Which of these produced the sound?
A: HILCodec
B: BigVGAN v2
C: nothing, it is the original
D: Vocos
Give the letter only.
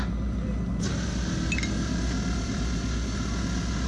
C